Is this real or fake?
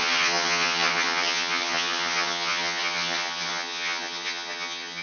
fake